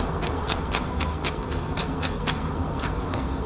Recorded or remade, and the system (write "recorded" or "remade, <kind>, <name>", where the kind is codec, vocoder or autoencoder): remade, codec, SNAC